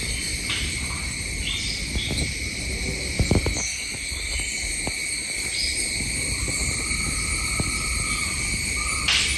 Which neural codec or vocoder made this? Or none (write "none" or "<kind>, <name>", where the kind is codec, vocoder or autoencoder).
none